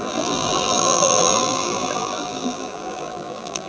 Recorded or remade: remade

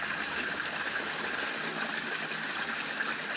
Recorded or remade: recorded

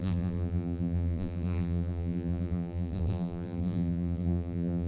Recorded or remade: remade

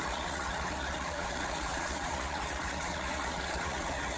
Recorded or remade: remade